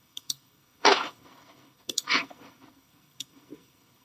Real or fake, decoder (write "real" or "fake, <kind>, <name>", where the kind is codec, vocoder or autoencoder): fake, codec, SNAC